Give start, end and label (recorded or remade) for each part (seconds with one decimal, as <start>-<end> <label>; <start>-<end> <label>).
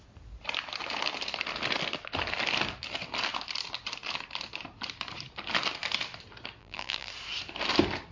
0.0-6.6 recorded; 6.6-7.1 remade; 7.1-8.1 recorded